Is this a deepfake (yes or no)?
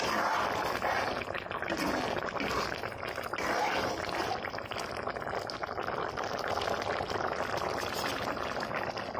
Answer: no